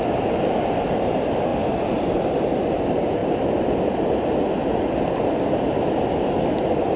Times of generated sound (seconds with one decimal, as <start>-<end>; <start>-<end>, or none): none